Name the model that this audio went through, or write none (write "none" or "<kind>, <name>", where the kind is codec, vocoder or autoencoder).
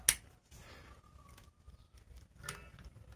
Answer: none